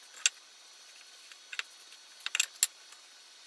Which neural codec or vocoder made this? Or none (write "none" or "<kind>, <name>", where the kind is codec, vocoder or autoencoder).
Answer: none